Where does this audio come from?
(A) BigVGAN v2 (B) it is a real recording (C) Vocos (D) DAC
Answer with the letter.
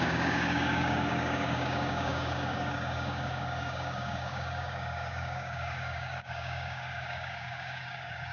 D